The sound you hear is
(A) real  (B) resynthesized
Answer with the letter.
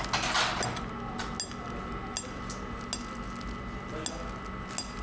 A